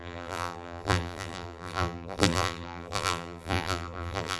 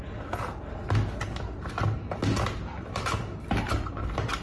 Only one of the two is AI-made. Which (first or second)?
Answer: first